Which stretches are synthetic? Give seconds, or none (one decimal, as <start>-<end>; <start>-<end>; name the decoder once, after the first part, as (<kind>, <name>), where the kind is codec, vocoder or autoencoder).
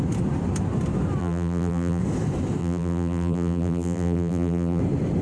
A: 1.2-2.0 (vocoder, BigVGAN v2); 2.6-4.8